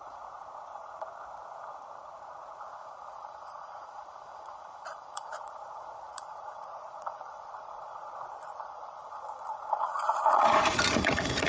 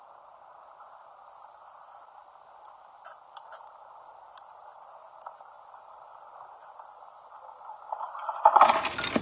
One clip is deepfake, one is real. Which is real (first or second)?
second